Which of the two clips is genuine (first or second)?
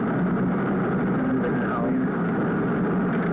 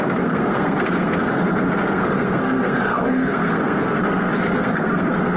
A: first